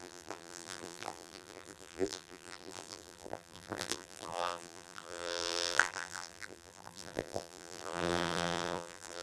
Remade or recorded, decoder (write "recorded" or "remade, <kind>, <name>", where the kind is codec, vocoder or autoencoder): remade, vocoder, BigVGAN v2